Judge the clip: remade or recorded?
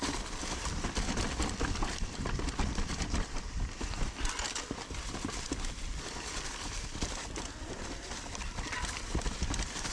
remade